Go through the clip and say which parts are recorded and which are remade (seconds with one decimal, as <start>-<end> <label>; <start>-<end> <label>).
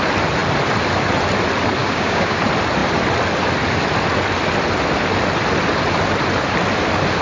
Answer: 0.0-1.8 recorded; 1.8-2.4 remade; 2.4-7.2 recorded